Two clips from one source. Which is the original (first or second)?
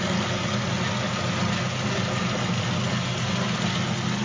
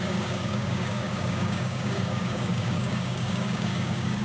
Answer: first